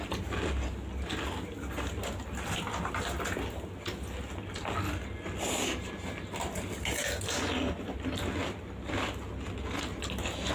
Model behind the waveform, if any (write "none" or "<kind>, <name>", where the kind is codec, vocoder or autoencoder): none